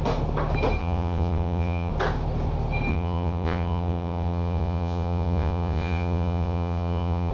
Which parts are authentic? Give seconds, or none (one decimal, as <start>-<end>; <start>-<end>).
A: 0.0-0.8; 1.9-2.9